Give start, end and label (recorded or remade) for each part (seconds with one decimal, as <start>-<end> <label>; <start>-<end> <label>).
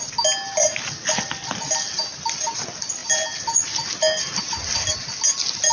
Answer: 0.0-5.7 recorded